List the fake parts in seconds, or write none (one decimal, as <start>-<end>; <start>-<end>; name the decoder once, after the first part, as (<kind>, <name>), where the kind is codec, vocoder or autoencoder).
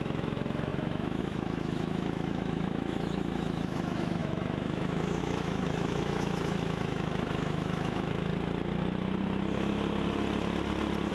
0.0-8.3 (autoencoder, DAC-VAE)